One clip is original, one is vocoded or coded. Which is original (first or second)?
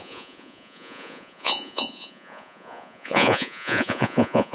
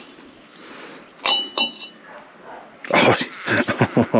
second